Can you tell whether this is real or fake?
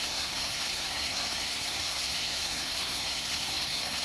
fake